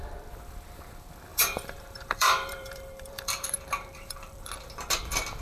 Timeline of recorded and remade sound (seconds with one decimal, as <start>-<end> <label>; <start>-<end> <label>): 0.0-1.3 recorded; 1.3-4.5 remade; 4.5-5.4 recorded